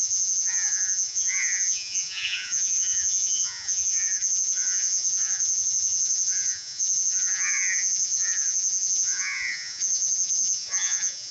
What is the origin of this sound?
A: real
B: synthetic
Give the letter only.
B